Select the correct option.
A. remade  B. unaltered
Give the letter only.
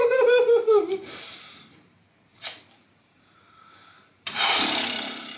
A